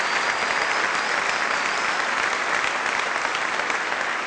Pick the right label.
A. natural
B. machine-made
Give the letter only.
A